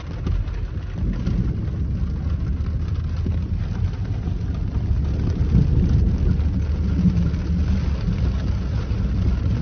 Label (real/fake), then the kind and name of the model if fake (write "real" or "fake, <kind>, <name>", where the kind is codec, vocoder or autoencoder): real